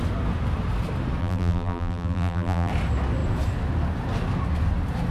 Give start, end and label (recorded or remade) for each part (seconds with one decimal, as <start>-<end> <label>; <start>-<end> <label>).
0.0-1.2 recorded; 1.2-2.7 remade; 2.7-5.1 recorded